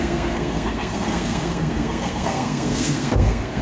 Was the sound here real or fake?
fake